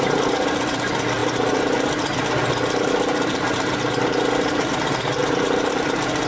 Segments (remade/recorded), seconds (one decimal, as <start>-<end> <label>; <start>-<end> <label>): 0.0-6.3 recorded